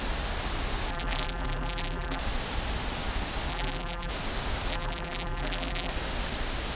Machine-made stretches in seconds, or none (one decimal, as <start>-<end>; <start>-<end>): 0.9-2.2; 3.5-4.1; 4.7-5.9